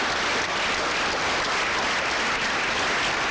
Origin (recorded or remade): recorded